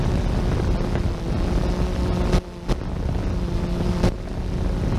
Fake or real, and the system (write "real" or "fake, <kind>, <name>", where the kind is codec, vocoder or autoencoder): real